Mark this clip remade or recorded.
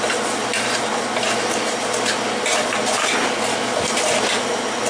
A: recorded